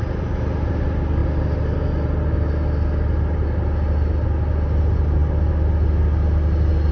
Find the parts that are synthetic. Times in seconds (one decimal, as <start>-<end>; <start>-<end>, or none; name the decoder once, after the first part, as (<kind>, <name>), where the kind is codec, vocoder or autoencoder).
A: none

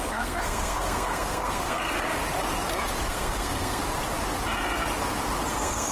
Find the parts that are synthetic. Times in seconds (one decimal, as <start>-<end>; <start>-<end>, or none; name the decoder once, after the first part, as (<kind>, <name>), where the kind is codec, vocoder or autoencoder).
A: 0.0-2.2 (codec, SNAC); 3.1-3.8; 5.5-5.9